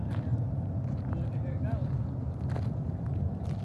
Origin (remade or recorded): recorded